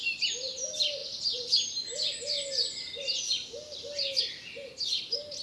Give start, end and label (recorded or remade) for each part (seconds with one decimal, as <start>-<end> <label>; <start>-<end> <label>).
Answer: 0.0-5.4 recorded